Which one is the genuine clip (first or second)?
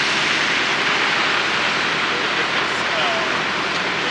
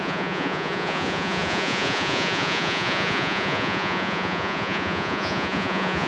first